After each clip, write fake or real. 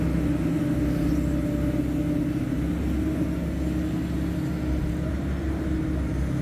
real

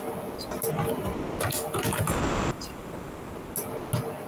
real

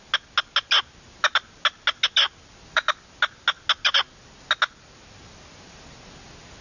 real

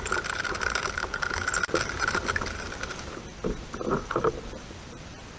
real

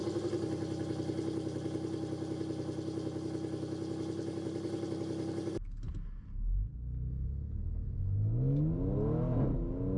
real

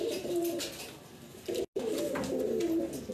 real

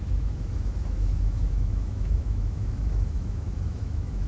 fake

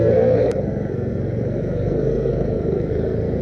fake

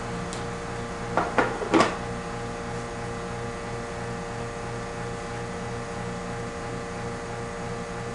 real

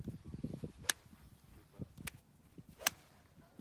real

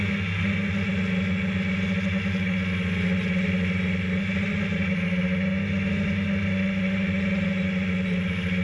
real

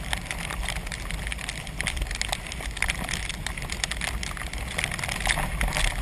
real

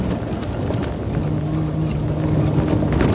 real